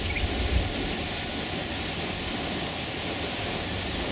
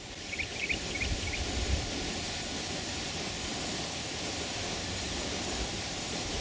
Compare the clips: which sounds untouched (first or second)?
first